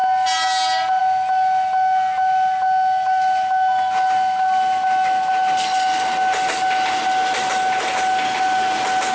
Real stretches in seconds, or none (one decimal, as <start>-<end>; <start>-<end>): 0.0-9.1